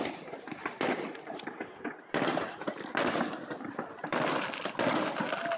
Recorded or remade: recorded